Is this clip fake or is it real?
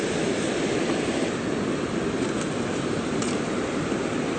real